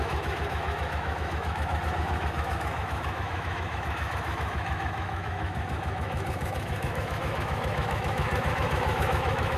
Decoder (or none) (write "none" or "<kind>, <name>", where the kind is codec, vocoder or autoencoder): autoencoder, DAC-VAE